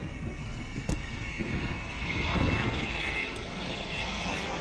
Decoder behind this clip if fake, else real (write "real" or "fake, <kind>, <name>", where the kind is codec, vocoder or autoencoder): fake, codec, SNAC